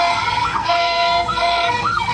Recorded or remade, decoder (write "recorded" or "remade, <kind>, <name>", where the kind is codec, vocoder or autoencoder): remade, codec, SNAC